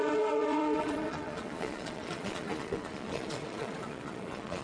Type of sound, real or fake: fake